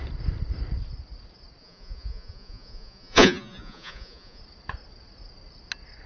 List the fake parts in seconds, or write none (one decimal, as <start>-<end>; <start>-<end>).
1.6-4.4